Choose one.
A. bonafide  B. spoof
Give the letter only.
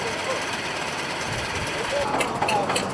A